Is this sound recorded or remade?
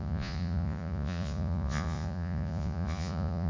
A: remade